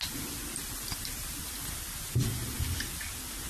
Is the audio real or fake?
real